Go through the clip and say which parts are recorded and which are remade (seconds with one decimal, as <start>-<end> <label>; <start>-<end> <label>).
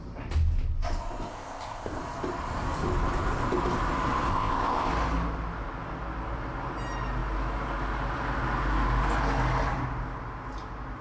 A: 0.0-1.3 recorded; 1.3-2.0 remade; 2.0-4.3 recorded; 4.3-4.9 remade; 4.9-11.0 recorded